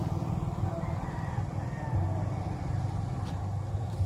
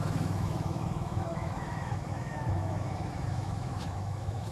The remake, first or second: second